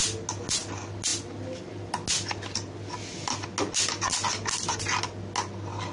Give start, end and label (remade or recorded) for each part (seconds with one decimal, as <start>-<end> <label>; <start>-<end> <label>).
0.0-5.9 recorded